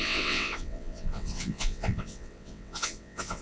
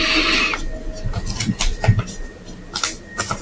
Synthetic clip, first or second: first